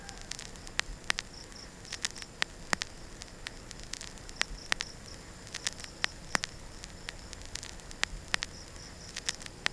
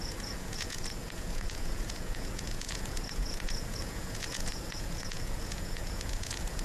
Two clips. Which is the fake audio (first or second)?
second